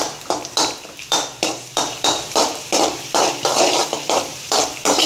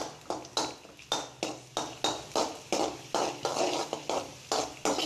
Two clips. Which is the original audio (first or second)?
second